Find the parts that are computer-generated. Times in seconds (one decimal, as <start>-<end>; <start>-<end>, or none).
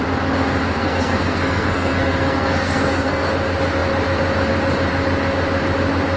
0.8-3.3